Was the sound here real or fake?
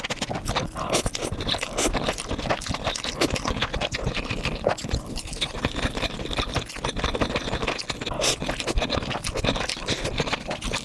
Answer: real